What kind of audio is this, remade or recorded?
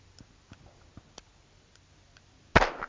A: recorded